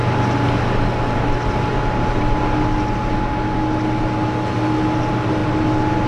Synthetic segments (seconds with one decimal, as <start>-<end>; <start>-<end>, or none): none